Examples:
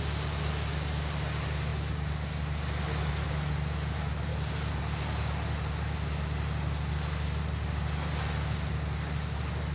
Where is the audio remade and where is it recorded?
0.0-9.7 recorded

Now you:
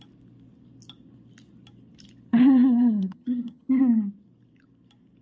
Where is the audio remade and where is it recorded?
0.0-2.3 recorded; 2.3-3.8 remade; 3.8-5.2 recorded

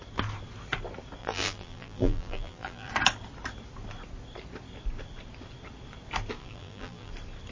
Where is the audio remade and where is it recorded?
0.0-1.2 recorded; 1.2-2.9 remade; 2.9-6.4 recorded; 6.4-7.1 remade; 7.1-7.5 recorded

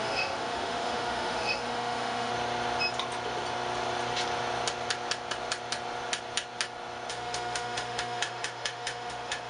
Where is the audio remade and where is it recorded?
0.0-2.3 remade; 2.3-7.1 recorded; 7.1-9.5 remade

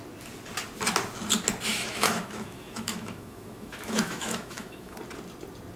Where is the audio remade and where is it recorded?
0.0-1.7 recorded; 1.7-5.0 remade; 5.0-5.8 recorded

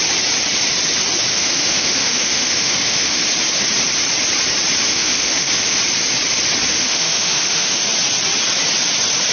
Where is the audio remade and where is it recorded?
0.0-1.3 recorded; 1.3-3.2 remade; 3.2-4.9 recorded; 4.9-5.8 remade; 5.8-6.7 recorded; 6.7-7.8 remade; 7.8-9.3 recorded

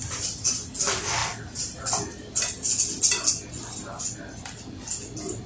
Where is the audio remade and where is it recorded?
0.0-5.5 recorded